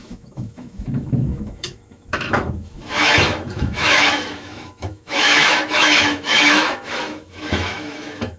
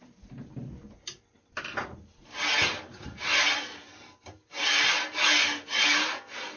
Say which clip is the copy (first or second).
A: first